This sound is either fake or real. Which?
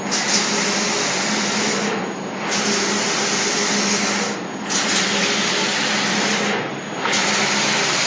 real